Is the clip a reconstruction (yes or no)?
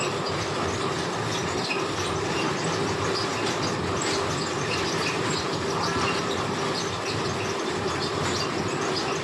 no